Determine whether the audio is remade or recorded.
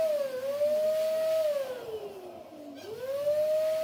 recorded